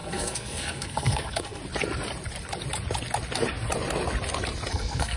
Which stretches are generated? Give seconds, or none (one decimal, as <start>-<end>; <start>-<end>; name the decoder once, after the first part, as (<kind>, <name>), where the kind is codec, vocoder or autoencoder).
0.0-1.6 (codec, SNAC); 4.7-5.2